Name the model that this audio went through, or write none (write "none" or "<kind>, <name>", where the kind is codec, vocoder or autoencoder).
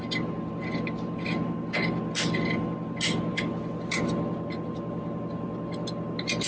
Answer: none